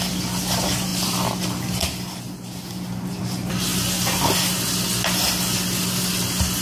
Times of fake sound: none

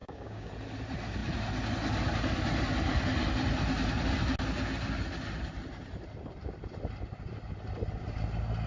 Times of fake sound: 0.0-0.5

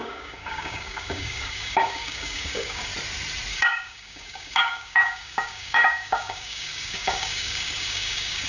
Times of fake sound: 0.0-2.9; 3.5-8.5

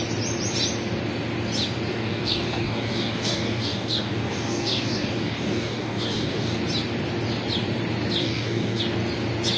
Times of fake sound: 1.9-6.6; 8.2-8.8

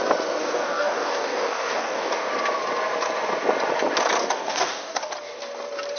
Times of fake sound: 0.4-2.3; 4.2-5.1

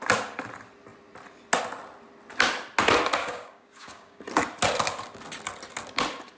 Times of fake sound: 3.2-4.2

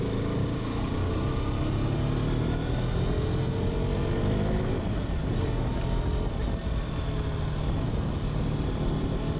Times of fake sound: 0.4-1.1